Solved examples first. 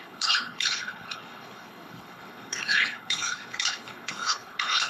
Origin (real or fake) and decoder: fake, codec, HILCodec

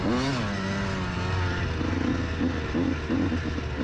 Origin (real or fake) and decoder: real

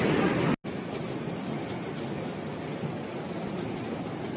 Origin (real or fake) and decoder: real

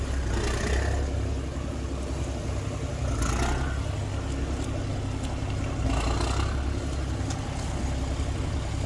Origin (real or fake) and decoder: real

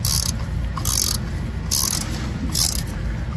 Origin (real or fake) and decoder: real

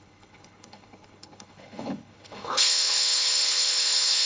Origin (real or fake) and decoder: fake, codec, HILCodec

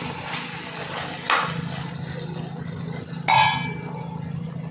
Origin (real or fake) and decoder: real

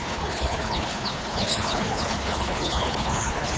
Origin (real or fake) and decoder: fake, codec, HILCodec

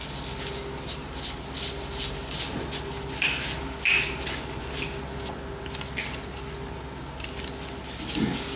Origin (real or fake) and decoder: real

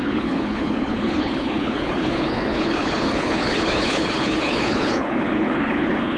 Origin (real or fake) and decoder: fake, codec, HILCodec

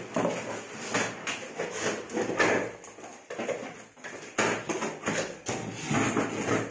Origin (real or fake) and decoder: real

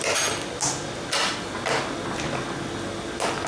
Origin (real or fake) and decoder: real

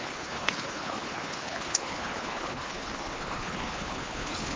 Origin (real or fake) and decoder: fake, codec, HILCodec